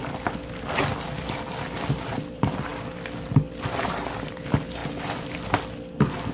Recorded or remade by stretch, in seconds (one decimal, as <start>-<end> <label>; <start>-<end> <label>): 0.0-6.3 recorded